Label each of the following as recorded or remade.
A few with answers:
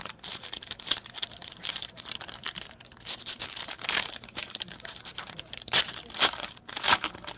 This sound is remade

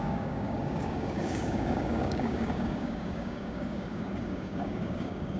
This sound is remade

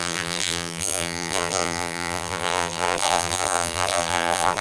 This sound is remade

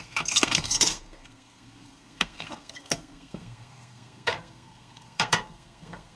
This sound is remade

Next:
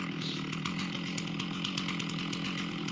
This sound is recorded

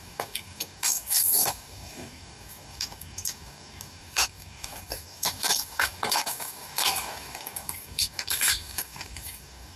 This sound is remade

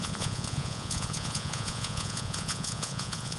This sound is remade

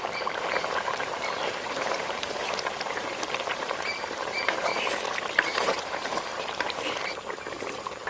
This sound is remade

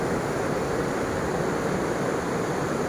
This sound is recorded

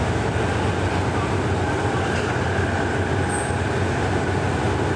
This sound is recorded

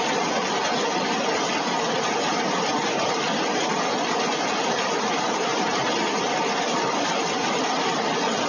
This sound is recorded